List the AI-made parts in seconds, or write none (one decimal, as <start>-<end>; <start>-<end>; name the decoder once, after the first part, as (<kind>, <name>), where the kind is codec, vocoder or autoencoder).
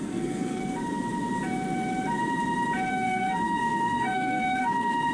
0.0-0.6 (codec, SNAC); 2.9-5.1